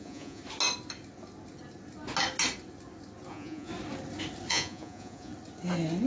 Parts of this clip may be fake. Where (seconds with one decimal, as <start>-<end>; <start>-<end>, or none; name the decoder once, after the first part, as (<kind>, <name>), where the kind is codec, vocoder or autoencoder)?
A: 0.0-0.4 (vocoder, Vocos); 3.3-3.7; 4.5-5.3